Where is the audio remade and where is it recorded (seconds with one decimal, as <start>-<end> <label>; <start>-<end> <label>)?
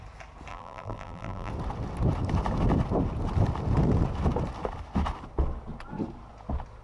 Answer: 0.0-0.5 recorded; 0.5-1.5 remade; 1.5-6.8 recorded